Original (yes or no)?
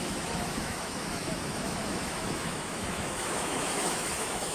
no